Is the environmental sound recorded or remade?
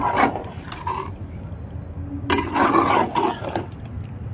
recorded